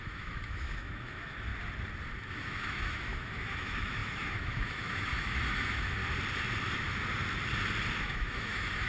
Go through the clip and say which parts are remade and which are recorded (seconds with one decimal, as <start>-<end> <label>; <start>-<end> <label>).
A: 0.0-1.5 remade; 1.5-2.3 recorded; 2.3-6.0 remade; 6.0-7.9 recorded; 7.9-8.9 remade